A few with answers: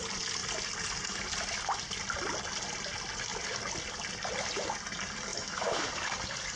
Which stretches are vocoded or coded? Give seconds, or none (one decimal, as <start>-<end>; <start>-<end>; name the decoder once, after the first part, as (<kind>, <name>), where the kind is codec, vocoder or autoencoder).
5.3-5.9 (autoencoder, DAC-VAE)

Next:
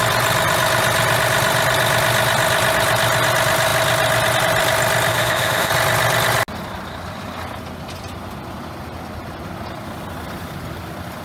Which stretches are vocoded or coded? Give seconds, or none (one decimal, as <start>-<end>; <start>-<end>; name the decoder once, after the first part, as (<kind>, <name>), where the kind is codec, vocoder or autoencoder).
5.1-5.7 (autoencoder, DAC-VAE)

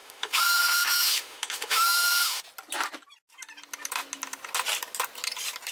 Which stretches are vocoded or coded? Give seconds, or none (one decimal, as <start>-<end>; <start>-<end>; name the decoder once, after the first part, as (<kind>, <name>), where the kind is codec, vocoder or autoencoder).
0.0-2.4 (autoencoder, DAC-VAE)

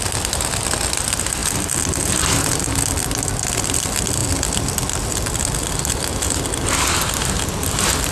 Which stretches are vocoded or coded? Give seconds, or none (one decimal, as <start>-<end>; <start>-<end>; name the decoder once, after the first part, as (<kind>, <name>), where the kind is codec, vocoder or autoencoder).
none